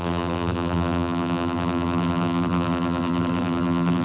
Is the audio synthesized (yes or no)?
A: yes